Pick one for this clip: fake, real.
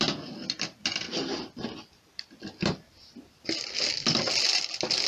real